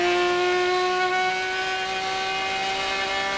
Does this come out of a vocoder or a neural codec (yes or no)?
no